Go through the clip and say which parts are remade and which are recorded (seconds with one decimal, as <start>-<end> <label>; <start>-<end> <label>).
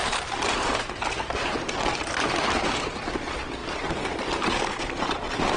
0.0-0.8 remade; 0.8-5.6 recorded